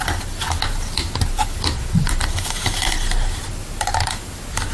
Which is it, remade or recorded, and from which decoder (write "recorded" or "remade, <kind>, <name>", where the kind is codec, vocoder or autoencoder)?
recorded